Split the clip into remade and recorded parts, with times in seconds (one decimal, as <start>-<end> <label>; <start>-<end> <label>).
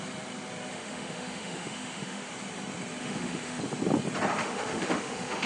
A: 0.0-0.7 recorded; 0.7-2.3 remade; 2.3-3.0 recorded; 3.0-3.6 remade; 3.6-4.4 recorded; 4.4-5.5 remade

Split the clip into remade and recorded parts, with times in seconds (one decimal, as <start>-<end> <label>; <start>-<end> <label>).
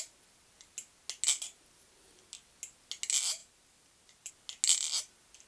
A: 0.0-3.4 recorded; 3.4-4.3 remade; 4.3-5.5 recorded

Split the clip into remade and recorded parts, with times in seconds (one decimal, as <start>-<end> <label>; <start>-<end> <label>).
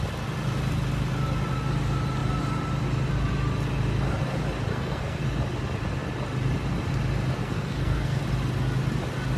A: 0.0-4.7 recorded; 4.7-5.2 remade; 5.2-7.4 recorded; 7.4-8.2 remade; 8.2-9.4 recorded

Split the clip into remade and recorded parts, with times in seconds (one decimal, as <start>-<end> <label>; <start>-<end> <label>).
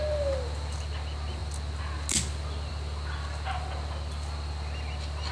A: 0.0-5.3 recorded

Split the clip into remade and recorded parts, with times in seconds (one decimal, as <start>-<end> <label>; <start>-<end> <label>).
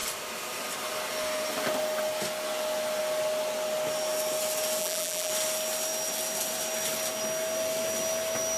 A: 0.0-4.8 recorded; 4.8-5.3 remade; 5.3-8.6 recorded